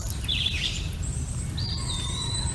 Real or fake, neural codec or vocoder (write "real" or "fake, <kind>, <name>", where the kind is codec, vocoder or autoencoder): real